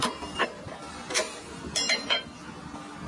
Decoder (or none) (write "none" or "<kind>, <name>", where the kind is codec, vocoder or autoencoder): none